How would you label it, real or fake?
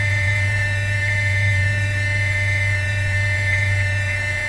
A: fake